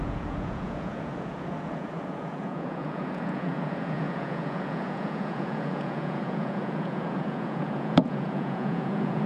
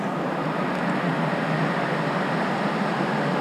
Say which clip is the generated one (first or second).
first